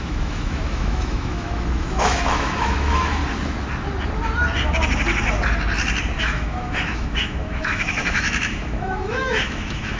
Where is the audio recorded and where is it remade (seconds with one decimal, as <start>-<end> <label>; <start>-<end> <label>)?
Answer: 0.0-3.2 remade; 3.2-6.2 recorded; 6.2-10.0 remade